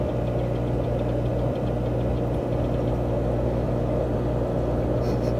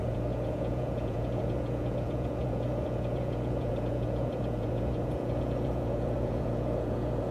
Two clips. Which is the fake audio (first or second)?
second